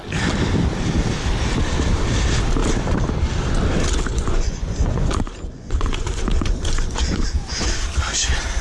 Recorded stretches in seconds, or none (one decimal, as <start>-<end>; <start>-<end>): 0.0-4.1; 7.7-8.6